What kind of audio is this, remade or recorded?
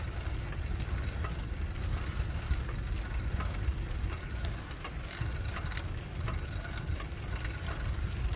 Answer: recorded